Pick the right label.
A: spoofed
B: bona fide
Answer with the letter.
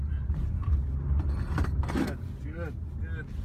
B